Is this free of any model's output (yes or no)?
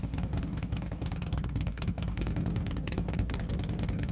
no